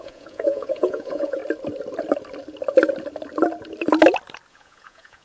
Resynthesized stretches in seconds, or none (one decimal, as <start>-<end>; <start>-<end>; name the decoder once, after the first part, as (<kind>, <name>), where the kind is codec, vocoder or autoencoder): 0.0-1.4 (vocoder, Vocos); 4.5-5.2